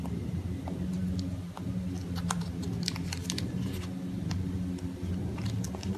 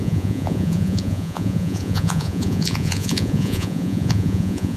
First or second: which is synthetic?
second